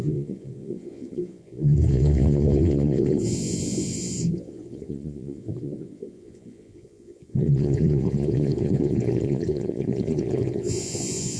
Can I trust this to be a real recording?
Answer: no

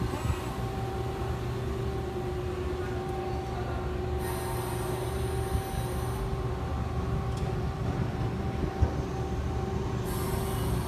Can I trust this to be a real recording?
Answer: yes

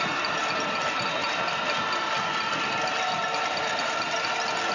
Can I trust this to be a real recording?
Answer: yes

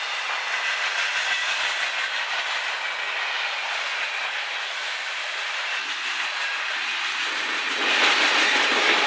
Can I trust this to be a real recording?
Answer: yes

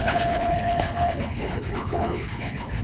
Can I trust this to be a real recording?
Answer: no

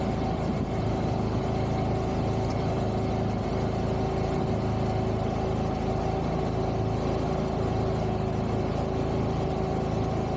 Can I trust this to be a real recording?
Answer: yes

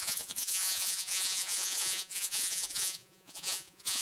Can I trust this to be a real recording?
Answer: no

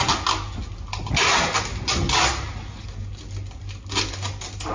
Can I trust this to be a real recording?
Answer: yes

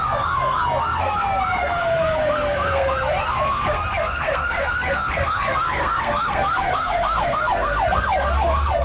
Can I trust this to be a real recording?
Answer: no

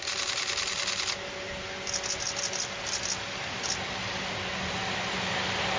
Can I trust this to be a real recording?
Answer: yes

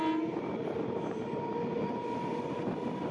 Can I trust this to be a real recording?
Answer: yes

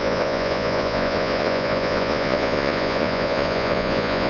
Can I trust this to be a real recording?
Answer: no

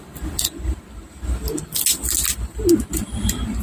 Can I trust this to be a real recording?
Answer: yes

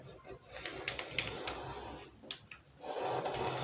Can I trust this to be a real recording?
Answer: yes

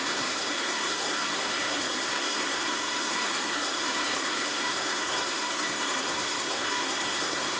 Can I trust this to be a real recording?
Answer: no